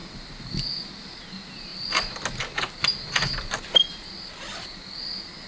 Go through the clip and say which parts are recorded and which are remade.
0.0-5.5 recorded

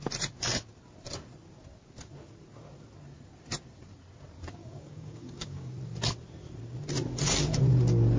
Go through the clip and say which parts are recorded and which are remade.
0.0-4.6 recorded; 4.6-5.7 remade; 5.7-8.2 recorded

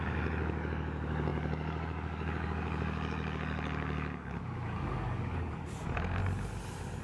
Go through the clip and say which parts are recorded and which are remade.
0.0-6.2 remade; 6.2-7.0 recorded

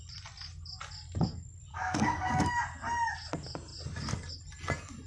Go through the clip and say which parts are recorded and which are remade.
0.0-1.7 recorded; 1.7-2.5 remade; 2.5-5.1 recorded

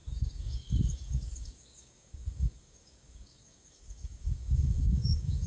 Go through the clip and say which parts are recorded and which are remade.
0.0-5.5 remade